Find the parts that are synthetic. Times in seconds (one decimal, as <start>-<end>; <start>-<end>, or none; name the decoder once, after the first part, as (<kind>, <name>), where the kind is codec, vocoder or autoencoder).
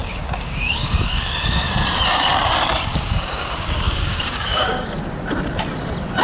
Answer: 0.0-1.7 (codec, DAC); 2.9-5.0